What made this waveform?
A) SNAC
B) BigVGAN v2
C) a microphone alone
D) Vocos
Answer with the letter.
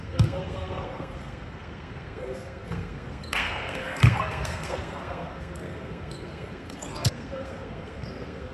A